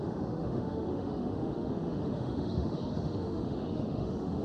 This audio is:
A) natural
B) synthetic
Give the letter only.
B